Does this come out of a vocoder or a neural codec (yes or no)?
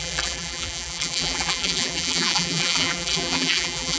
yes